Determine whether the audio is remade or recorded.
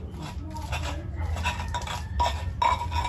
recorded